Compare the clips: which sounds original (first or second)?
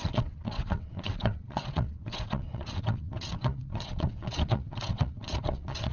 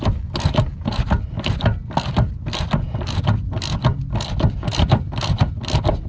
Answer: second